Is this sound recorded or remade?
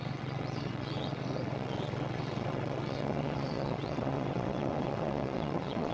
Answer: remade